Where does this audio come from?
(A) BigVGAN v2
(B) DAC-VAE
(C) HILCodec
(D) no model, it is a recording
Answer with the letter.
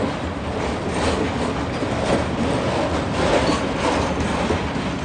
D